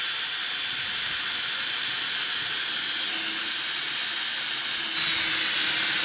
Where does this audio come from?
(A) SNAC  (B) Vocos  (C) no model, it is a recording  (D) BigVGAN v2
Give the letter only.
C